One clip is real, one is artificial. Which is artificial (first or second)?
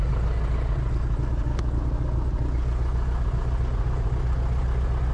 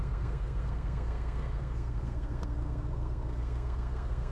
second